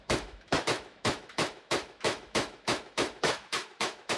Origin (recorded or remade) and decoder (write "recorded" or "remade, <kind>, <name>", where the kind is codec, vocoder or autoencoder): remade, autoencoder, DAC-VAE